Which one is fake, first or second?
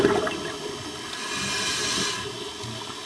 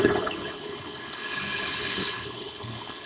second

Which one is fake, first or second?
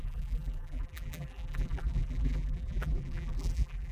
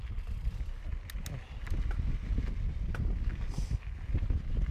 first